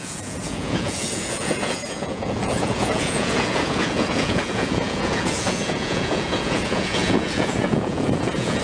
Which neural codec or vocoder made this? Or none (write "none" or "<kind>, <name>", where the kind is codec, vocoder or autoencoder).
vocoder, Vocos